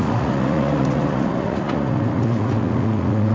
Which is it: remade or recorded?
remade